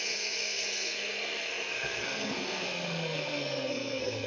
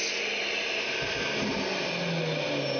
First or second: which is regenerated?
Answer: first